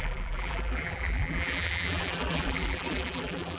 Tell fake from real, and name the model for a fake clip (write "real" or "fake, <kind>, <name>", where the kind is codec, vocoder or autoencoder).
fake, vocoder, BigVGAN v2